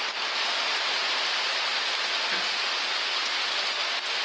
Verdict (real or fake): real